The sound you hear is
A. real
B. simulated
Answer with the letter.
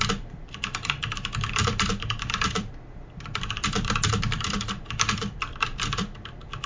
B